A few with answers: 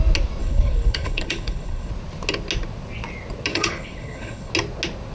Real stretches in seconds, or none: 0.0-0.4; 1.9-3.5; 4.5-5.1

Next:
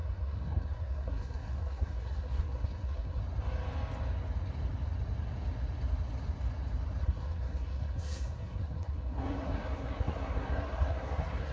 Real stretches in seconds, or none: 3.2-7.0

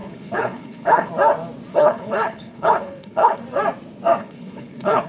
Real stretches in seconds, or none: 1.1-1.7; 3.4-4.2

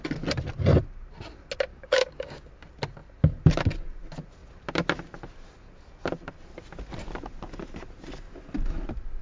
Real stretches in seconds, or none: 0.0-1.7; 2.5-9.2

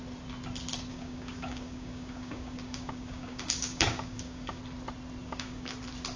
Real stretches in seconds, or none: 0.0-0.9; 4.6-5.2; 5.7-6.2

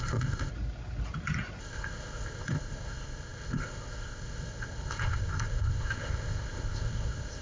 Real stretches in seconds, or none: 0.5-1.6

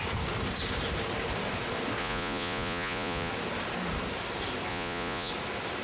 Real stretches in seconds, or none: 0.0-2.0; 3.3-4.7; 5.3-5.8